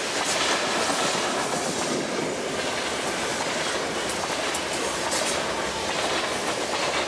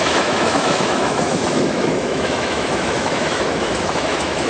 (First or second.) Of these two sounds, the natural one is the first